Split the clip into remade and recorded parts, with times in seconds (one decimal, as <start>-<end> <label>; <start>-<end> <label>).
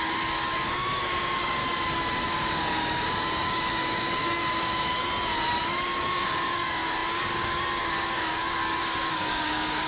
0.0-1.6 remade; 1.6-2.3 recorded; 2.3-5.0 remade; 5.0-5.6 recorded; 5.6-9.9 remade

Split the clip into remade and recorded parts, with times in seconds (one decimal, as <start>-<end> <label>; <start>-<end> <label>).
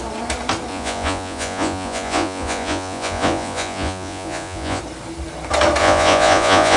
0.0-0.7 recorded; 0.7-4.8 remade; 4.8-5.8 recorded; 5.8-6.8 remade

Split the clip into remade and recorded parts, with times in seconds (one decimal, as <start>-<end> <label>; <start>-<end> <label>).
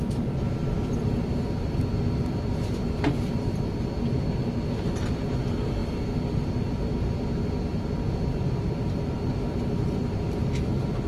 0.0-11.1 recorded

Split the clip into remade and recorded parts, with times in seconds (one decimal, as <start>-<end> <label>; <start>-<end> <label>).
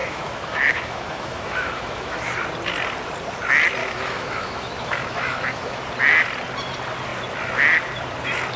0.0-2.2 remade; 2.2-3.8 recorded; 3.8-5.8 remade; 5.8-8.6 recorded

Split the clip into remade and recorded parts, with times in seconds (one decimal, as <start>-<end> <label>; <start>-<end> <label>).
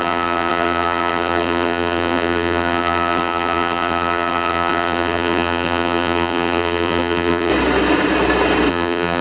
0.0-7.5 remade; 7.5-8.7 recorded; 8.7-9.2 remade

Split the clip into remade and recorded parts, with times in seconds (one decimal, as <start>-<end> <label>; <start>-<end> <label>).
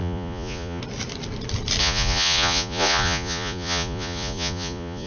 0.0-0.8 remade; 0.8-1.8 recorded; 1.8-5.1 remade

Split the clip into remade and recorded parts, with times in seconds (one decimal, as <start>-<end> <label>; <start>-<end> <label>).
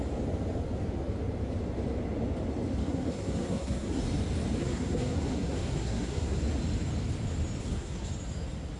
0.0-2.8 recorded; 2.8-4.0 remade; 4.0-4.6 recorded; 4.6-6.4 remade; 6.4-7.6 recorded; 7.6-8.1 remade; 8.1-8.8 recorded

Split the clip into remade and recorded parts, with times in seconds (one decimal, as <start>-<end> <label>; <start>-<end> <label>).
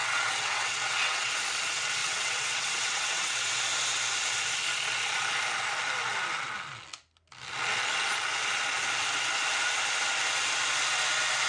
0.0-1.3 remade; 1.3-2.0 recorded; 2.0-3.5 remade; 3.5-11.5 recorded